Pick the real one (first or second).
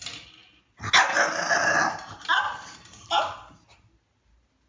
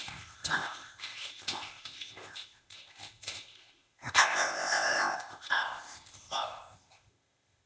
first